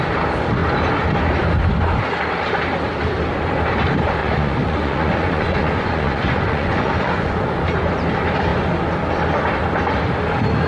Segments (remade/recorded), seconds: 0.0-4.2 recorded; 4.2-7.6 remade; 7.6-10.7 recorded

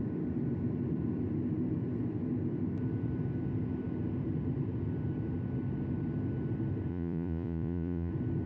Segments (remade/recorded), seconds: 0.0-6.9 recorded; 6.9-8.1 remade; 8.1-8.5 recorded

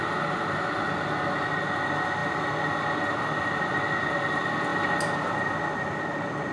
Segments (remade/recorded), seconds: 0.0-6.5 recorded

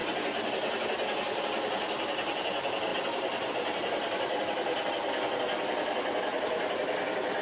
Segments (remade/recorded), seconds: 0.0-7.4 recorded

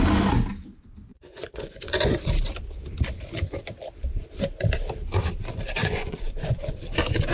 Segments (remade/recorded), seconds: 0.0-1.1 recorded; 1.1-2.3 remade; 2.3-5.8 recorded; 5.8-6.8 remade; 6.8-7.3 recorded

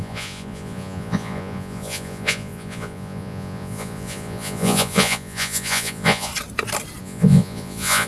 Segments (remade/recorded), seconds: 0.0-6.3 remade; 6.3-7.0 recorded; 7.0-8.1 remade

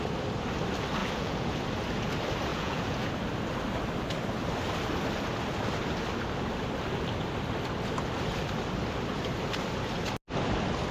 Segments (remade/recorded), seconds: 0.0-1.0 recorded; 1.0-1.5 remade; 1.5-2.5 recorded; 2.5-3.1 remade; 3.1-10.9 recorded